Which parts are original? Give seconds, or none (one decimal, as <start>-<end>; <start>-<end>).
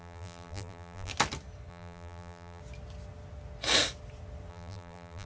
1.1-1.7; 2.6-4.5